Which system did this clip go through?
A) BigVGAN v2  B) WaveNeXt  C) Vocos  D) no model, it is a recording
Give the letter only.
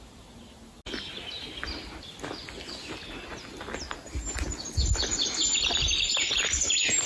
D